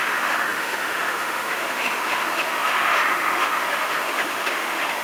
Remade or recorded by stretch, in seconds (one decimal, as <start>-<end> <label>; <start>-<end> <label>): 0.0-5.0 remade